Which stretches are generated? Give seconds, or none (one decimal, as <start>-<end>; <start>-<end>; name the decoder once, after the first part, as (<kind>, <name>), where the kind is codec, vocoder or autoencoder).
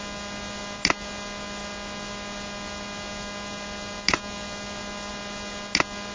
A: none